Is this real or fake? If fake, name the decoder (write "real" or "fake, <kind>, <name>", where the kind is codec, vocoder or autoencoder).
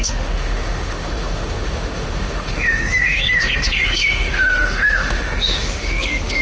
fake, autoencoder, DAC-VAE